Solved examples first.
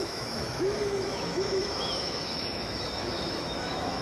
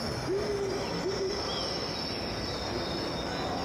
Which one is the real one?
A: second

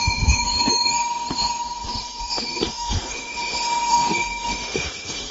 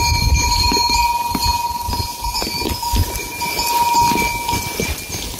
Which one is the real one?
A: second